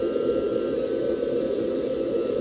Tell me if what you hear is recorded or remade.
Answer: recorded